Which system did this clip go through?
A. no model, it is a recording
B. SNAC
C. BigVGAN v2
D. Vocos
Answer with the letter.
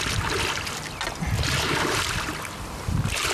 A